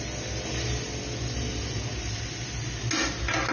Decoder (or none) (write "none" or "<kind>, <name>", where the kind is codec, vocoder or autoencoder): none